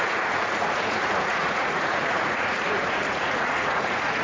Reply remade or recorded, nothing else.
remade